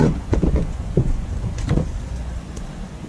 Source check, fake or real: fake